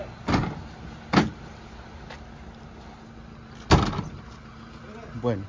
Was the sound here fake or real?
real